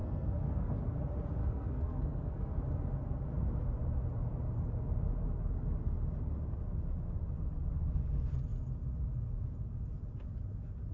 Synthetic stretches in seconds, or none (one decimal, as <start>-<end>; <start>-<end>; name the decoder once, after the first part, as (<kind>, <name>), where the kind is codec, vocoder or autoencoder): 0.0-0.7 (codec, SNAC); 1.4-2.5